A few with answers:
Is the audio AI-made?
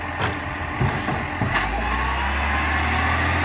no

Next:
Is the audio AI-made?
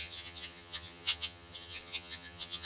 yes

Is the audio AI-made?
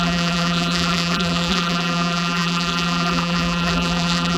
yes